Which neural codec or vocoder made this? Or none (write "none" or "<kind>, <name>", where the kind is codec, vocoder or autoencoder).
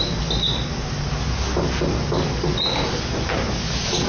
none